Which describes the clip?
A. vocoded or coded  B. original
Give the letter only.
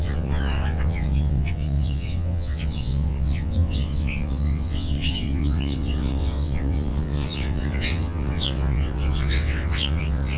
A